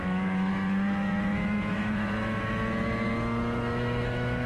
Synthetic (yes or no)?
yes